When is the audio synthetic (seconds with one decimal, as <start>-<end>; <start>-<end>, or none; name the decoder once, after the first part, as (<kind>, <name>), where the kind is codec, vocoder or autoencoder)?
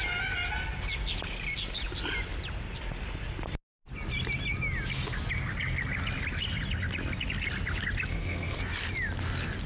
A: 8.1-8.6 (codec, SNAC)